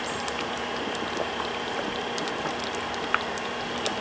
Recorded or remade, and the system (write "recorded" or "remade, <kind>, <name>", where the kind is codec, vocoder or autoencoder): recorded